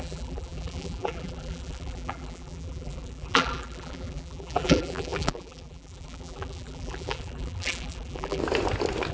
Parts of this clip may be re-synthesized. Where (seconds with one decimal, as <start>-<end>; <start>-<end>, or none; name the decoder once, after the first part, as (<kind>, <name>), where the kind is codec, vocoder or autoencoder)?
0.0-8.4 (vocoder, BigVGAN v2)